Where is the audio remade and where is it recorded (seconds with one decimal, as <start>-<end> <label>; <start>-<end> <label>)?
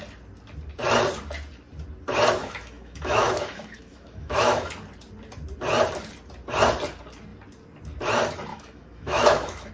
0.0-2.4 recorded; 2.4-4.7 remade; 4.7-8.5 recorded; 8.5-9.7 remade